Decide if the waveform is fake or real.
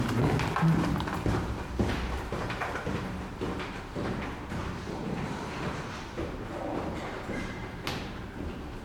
fake